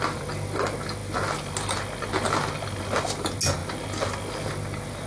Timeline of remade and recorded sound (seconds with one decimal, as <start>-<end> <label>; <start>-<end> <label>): 0.0-5.1 recorded